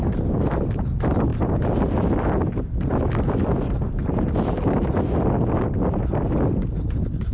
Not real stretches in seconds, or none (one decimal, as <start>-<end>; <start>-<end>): none